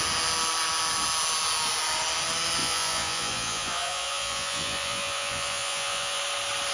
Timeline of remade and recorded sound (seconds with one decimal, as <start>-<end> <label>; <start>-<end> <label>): 0.0-2.6 recorded; 2.6-6.2 remade; 6.2-6.7 recorded